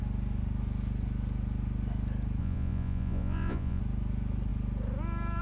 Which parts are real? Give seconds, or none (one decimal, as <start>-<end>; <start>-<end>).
0.0-2.4; 3.8-5.4